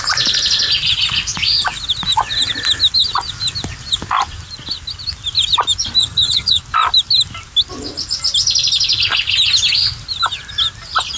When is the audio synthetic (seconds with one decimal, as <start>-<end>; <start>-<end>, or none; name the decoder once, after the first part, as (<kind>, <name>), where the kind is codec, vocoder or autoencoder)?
6.0-6.6 (vocoder, HiFi-GAN)